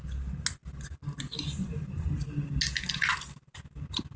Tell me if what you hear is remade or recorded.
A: recorded